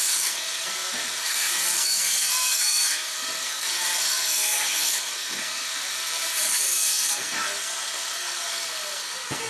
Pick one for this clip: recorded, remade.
remade